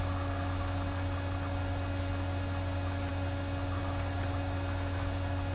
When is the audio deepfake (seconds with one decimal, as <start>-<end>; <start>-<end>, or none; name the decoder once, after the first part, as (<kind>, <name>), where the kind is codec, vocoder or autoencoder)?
none